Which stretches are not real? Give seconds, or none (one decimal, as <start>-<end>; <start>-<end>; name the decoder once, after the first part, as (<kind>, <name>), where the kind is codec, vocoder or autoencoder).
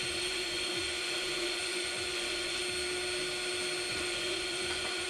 0.0-2.6 (vocoder, Vocos); 3.9-5.1